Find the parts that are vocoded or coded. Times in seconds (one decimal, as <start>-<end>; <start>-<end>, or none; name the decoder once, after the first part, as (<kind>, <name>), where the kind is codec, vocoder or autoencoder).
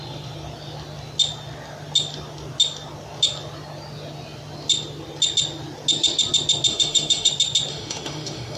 6.7-7.3 (autoencoder, DAC-VAE); 7.7-8.6